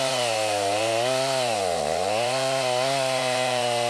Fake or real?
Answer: fake